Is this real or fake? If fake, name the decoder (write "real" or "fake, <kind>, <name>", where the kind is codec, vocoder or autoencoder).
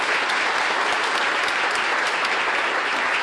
real